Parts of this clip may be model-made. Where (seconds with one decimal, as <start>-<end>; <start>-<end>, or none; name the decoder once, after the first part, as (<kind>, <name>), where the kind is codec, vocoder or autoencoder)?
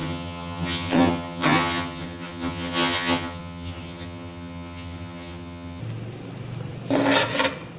0.0-5.8 (vocoder, HiFi-GAN)